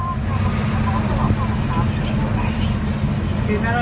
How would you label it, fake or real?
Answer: real